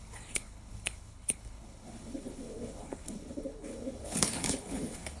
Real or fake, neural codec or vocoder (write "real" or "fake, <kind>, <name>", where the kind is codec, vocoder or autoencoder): fake, codec, HILCodec